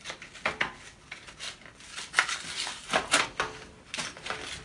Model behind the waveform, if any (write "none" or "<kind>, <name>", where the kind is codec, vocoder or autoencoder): none